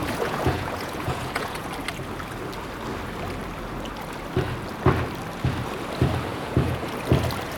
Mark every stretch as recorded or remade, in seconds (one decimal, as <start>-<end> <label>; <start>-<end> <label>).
0.0-1.7 remade; 1.7-6.3 recorded; 6.3-6.9 remade; 6.9-7.6 recorded